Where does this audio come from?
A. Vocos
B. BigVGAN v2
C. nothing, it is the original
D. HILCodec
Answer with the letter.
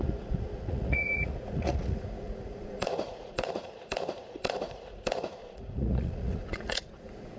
A